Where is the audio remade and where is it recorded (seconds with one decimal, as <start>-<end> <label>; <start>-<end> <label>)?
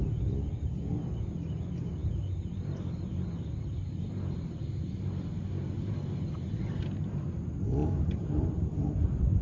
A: 0.0-7.8 recorded; 7.8-8.5 remade; 8.5-9.4 recorded